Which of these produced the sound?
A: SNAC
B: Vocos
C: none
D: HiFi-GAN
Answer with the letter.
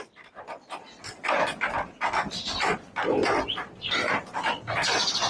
C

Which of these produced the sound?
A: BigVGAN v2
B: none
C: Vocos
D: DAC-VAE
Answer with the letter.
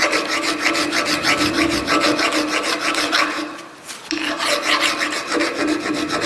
B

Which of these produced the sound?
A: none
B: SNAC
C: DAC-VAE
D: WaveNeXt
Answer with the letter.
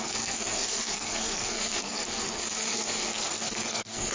B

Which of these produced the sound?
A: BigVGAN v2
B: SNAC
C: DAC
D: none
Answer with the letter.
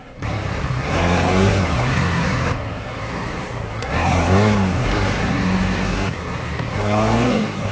B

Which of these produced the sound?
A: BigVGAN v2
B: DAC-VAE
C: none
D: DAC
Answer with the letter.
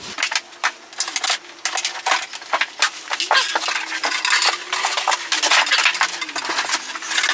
C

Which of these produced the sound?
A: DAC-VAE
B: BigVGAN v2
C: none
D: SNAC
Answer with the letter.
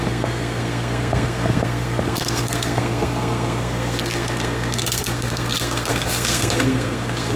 D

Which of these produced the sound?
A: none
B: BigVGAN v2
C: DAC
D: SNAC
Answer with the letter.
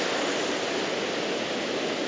A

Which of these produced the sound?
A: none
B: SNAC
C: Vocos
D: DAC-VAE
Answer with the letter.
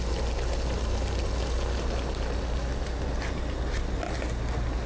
A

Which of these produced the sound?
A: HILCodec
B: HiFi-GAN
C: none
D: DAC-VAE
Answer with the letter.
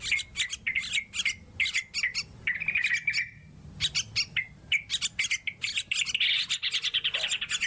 C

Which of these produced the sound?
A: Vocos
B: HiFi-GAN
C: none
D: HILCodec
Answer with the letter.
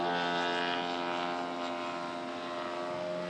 C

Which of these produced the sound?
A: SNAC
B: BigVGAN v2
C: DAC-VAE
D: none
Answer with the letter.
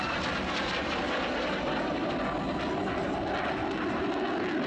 D